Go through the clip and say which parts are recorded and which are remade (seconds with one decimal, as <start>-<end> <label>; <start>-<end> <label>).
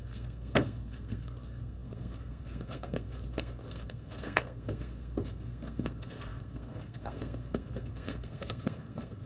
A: 0.0-9.3 remade